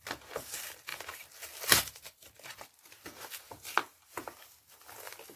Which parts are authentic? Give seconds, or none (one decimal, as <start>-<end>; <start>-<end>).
0.0-3.8; 4.3-5.4